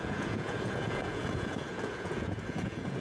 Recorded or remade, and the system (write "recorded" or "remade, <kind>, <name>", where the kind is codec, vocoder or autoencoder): remade, vocoder, Vocos